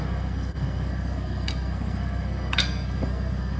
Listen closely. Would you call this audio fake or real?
fake